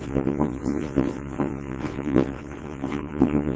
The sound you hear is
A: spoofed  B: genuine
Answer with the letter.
A